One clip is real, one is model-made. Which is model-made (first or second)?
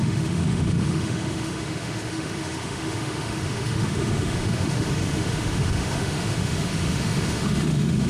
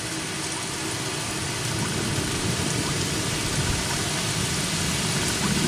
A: first